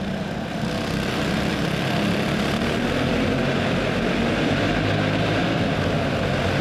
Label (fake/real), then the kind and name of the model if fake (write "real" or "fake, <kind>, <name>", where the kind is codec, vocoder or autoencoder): real